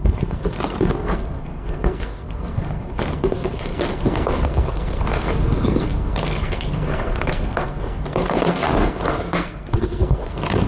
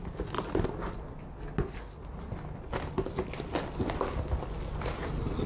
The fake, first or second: first